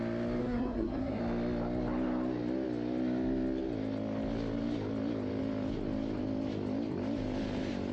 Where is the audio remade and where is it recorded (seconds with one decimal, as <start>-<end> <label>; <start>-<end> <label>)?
0.0-0.4 recorded; 0.4-1.2 remade; 1.2-7.9 recorded